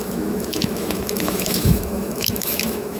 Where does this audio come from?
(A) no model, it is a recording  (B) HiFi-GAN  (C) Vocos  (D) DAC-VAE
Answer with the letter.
D